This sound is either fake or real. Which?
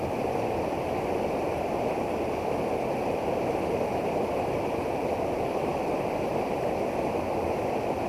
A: real